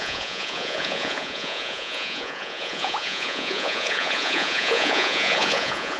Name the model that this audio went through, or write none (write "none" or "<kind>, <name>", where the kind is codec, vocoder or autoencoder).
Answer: vocoder, Vocos